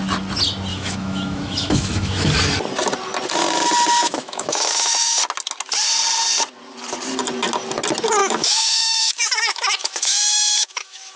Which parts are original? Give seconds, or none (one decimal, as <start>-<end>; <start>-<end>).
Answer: 0.0-0.7; 2.3-4.0; 5.2-8.2